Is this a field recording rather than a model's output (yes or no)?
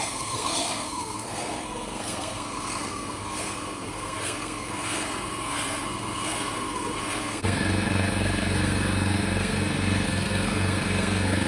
no